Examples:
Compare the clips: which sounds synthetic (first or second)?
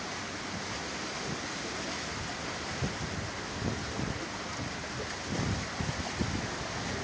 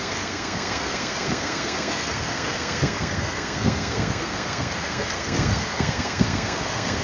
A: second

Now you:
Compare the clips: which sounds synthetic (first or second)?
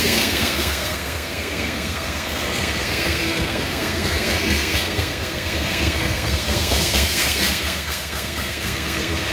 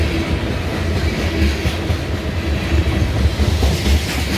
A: first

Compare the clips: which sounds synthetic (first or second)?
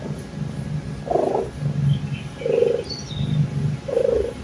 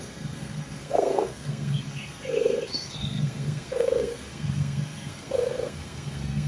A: second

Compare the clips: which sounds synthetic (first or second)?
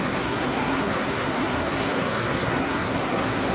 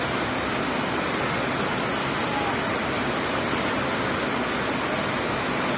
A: first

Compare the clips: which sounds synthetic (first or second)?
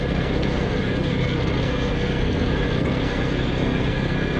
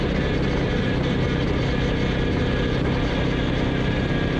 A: first